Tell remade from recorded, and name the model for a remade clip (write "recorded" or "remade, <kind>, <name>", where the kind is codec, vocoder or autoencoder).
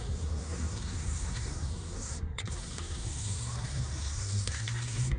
remade, codec, SNAC